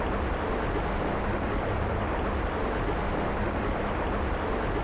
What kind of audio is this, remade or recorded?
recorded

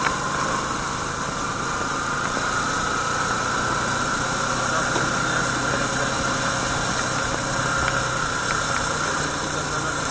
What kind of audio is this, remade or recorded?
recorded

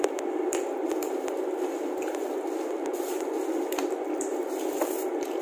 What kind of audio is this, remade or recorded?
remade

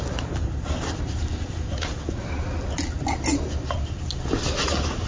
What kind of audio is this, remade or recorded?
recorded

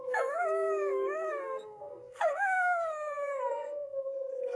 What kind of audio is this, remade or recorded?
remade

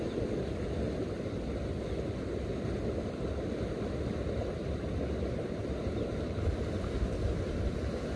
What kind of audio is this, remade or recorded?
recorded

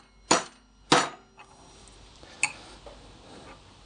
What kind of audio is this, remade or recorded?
recorded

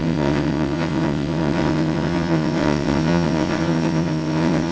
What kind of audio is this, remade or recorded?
remade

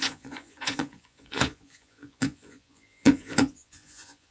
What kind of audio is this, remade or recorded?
remade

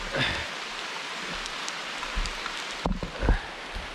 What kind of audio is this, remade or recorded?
recorded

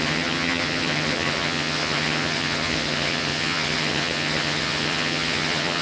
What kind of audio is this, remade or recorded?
remade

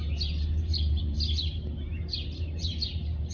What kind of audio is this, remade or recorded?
remade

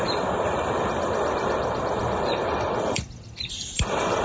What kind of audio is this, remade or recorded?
remade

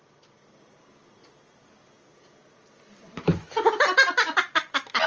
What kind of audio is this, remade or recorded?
recorded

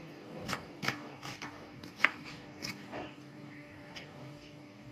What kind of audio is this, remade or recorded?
remade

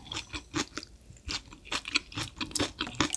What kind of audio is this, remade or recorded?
recorded